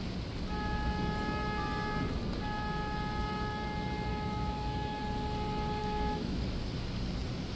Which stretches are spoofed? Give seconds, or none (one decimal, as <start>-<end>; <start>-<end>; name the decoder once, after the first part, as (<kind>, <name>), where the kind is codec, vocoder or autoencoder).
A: 4.1-5.0 (autoencoder, DAC-VAE); 5.8-6.4